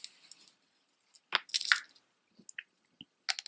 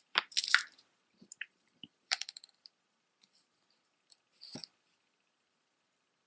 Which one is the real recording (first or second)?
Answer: first